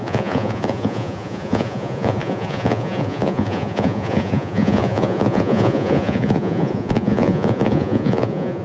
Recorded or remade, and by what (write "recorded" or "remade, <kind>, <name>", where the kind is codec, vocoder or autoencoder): remade, vocoder, Vocos